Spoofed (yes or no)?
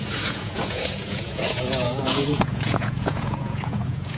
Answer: yes